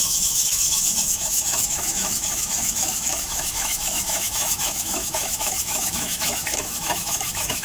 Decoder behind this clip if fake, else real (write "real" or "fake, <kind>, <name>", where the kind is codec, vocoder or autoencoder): fake, autoencoder, DAC-VAE